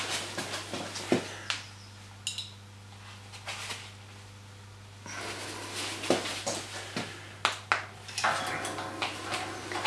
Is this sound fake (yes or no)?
no